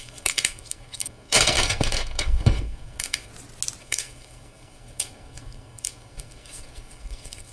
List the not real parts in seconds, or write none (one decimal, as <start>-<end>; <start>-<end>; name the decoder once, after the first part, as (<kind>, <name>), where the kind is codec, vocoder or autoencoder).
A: 0.0-3.3 (codec, SNAC); 3.8-7.5